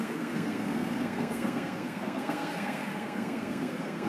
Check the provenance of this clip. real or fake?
fake